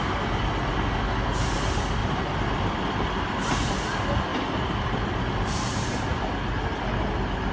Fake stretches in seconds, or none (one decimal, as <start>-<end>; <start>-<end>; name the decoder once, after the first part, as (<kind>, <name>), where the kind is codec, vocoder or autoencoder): 2.0-3.5 (vocoder, BigVGAN v2); 4.3-5.9

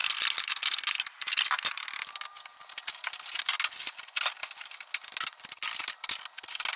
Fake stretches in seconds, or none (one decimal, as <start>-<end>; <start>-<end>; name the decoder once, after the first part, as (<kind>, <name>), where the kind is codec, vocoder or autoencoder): none